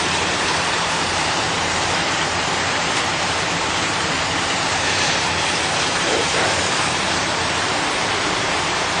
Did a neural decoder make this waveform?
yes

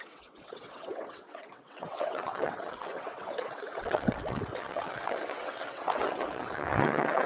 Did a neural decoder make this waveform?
yes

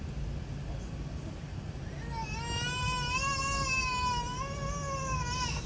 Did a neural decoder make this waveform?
no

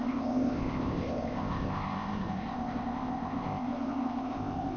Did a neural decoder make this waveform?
yes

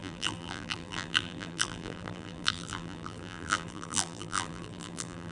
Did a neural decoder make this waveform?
yes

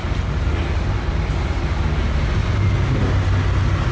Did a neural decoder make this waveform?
no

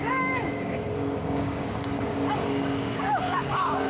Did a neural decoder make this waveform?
yes